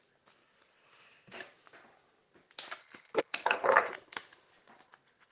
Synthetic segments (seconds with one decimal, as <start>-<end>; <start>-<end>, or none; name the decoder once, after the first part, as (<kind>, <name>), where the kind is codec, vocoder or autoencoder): 2.8-3.9 (codec, HILCodec)